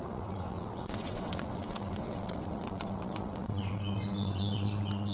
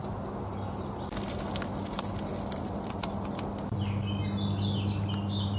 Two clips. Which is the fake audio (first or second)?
first